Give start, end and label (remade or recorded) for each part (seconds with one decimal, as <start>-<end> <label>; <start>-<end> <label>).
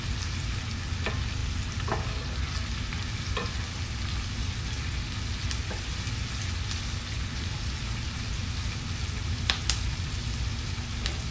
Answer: 0.0-11.3 recorded